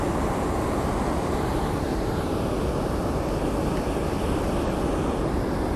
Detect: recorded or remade recorded